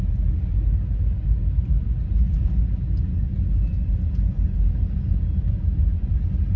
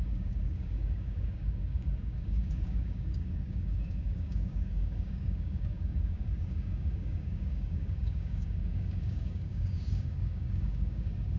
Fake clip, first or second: second